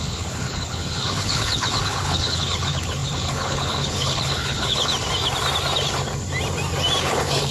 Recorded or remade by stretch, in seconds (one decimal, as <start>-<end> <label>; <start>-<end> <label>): 0.0-4.9 remade; 4.9-7.0 recorded; 7.0-7.5 remade